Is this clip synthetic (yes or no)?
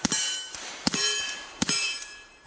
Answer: yes